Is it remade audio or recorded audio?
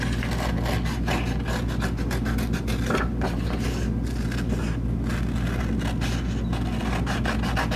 recorded